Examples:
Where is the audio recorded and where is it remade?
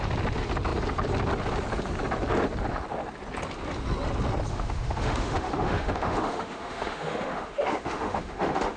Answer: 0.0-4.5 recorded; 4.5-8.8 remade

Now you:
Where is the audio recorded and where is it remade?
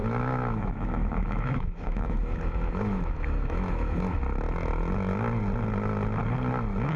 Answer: 0.0-4.2 remade; 4.2-7.0 recorded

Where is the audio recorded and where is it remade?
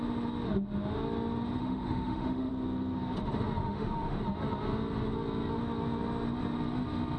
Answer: 0.0-1.6 recorded; 1.6-2.5 remade; 2.5-3.6 recorded; 3.6-4.2 remade; 4.2-7.2 recorded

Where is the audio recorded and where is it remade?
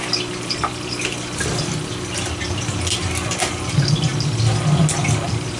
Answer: 0.0-5.6 recorded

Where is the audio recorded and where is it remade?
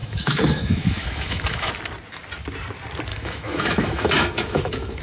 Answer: 0.0-1.7 remade; 1.7-3.1 recorded; 3.1-5.0 remade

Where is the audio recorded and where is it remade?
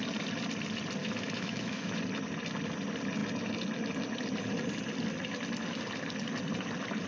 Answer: 0.0-1.0 recorded; 1.0-2.0 remade; 2.0-7.1 recorded